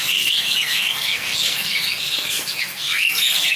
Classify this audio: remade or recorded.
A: remade